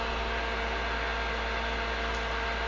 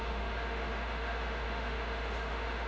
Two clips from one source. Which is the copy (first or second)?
second